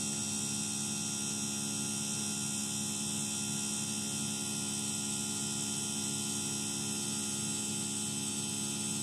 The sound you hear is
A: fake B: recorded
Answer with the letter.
B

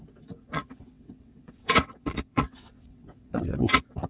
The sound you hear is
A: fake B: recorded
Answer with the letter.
A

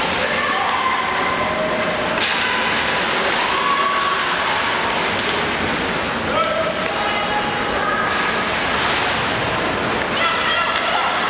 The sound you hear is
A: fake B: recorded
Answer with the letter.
B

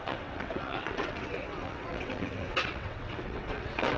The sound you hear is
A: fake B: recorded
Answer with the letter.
A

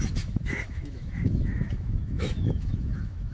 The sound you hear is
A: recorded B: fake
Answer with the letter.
B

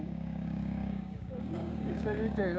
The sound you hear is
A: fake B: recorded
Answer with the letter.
A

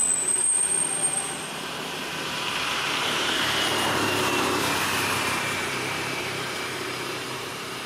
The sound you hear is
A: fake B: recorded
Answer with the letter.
A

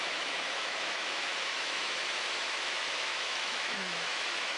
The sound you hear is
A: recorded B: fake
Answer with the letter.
B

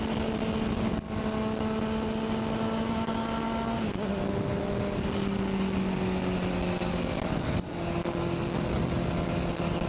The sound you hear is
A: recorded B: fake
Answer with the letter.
A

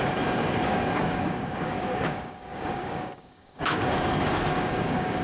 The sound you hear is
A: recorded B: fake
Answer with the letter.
B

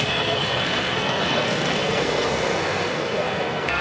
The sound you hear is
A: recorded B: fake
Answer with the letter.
B